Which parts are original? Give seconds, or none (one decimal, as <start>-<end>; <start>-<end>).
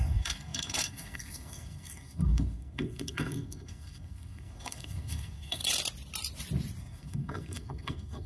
5.6-6.8